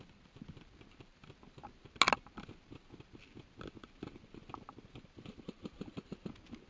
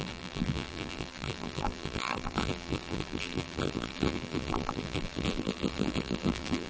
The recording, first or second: first